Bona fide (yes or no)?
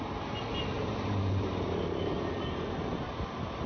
yes